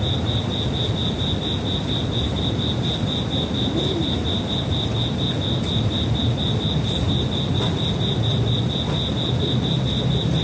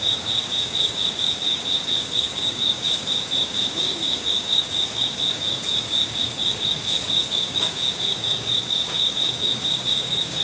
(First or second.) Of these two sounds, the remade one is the second